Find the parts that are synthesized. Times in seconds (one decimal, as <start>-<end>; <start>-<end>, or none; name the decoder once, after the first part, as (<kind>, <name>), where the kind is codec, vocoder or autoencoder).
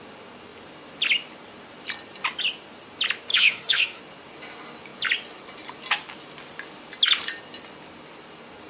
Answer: 3.3-4.0 (autoencoder, DAC-VAE)